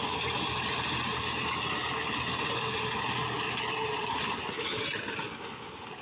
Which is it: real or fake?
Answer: real